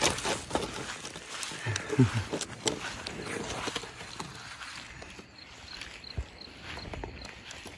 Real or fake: real